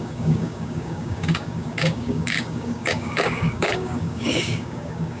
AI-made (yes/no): yes